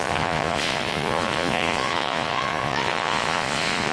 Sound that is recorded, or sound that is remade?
remade